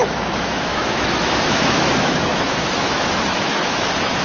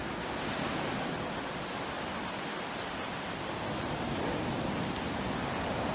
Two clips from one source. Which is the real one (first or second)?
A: second